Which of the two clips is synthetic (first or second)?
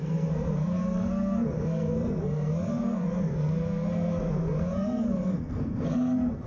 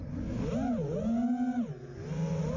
first